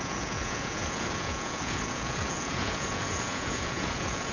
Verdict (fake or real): fake